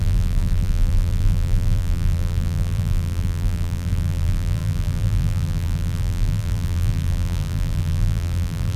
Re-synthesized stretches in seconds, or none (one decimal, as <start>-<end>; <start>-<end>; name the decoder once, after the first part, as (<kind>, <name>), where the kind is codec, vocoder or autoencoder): 0.0-8.8 (vocoder, BigVGAN v2)